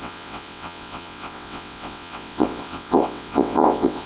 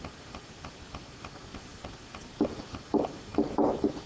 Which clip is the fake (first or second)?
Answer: first